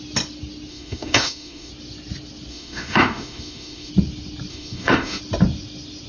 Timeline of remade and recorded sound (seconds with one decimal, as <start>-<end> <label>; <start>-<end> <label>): 0.0-0.7 recorded; 0.7-1.7 remade; 1.7-2.5 recorded; 2.5-3.9 remade; 3.9-4.5 recorded; 4.5-5.2 remade; 5.2-6.1 recorded